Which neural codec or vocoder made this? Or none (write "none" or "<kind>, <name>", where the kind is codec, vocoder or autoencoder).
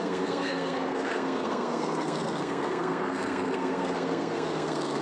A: codec, SNAC